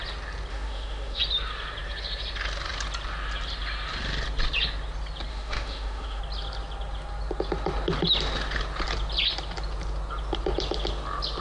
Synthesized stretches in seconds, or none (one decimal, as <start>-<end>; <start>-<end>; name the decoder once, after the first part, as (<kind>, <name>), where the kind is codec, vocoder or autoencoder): 0.5-1.2 (autoencoder, DAC-VAE); 5.3-6.2